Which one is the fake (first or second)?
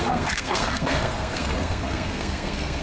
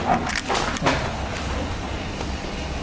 first